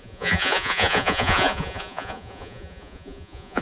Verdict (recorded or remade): remade